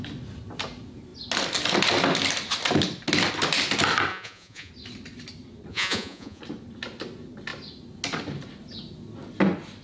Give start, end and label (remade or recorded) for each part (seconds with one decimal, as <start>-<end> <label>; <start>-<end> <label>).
0.0-4.1 recorded; 4.1-4.7 remade; 4.7-5.7 recorded; 5.7-6.4 remade; 6.4-9.8 recorded